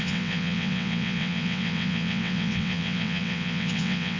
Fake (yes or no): yes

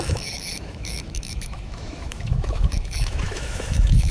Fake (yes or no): yes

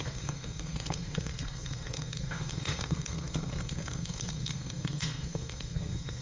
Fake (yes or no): yes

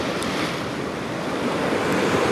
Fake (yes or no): no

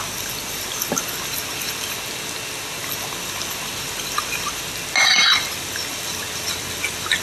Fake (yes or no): no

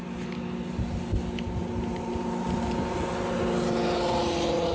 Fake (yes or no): no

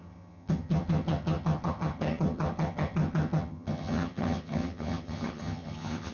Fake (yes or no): yes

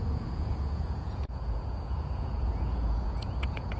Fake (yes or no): yes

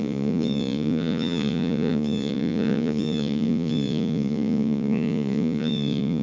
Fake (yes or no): yes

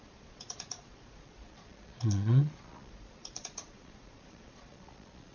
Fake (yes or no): yes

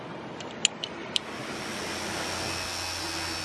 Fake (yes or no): no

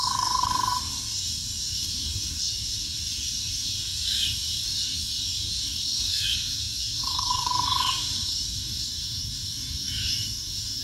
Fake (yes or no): yes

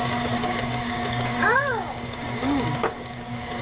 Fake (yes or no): yes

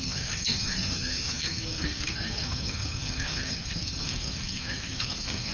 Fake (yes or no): yes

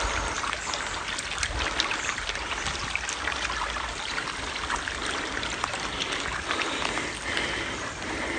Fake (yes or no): no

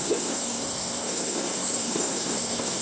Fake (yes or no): yes